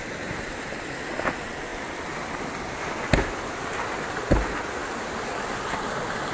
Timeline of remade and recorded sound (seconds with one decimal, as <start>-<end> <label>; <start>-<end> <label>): 0.0-6.3 recorded